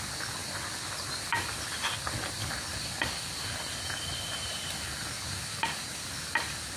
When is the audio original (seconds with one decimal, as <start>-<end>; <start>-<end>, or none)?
0.0-0.4; 4.3-6.8